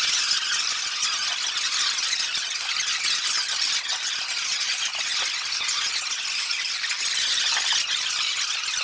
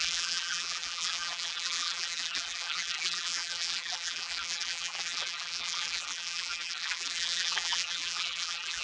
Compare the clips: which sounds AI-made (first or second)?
second